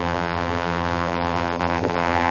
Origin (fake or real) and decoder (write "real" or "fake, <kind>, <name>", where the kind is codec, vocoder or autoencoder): fake, vocoder, BigVGAN v2